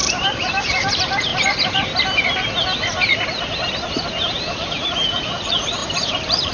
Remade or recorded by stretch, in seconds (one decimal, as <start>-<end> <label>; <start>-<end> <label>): 0.0-0.9 remade; 0.9-5.8 recorded; 5.8-6.5 remade